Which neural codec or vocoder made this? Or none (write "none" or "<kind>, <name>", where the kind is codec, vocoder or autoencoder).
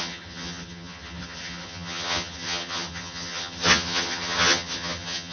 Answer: vocoder, HiFi-GAN